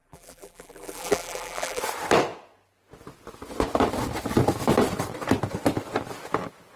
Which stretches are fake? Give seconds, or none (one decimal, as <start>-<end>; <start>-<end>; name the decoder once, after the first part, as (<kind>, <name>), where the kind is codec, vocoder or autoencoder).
0.0-1.8 (vocoder, BigVGAN v2)